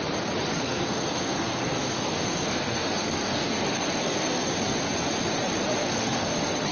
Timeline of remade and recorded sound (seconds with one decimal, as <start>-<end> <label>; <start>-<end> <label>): 0.0-0.5 recorded; 0.5-4.5 remade; 4.5-5.8 recorded; 5.8-6.3 remade; 6.3-6.7 recorded